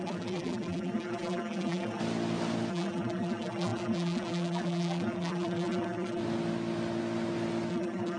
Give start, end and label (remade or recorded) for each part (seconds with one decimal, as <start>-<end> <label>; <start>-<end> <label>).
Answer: 0.0-2.0 remade; 2.0-2.7 recorded; 2.7-6.2 remade; 6.2-7.7 recorded; 7.7-8.2 remade